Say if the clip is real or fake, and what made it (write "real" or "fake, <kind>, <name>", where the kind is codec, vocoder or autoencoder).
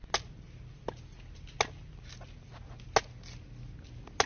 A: real